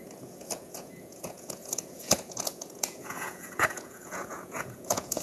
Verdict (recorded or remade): remade